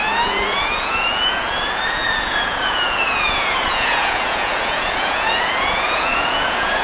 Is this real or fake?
fake